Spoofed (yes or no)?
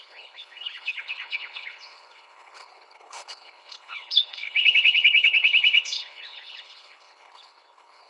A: yes